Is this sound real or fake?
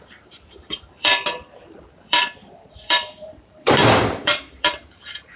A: fake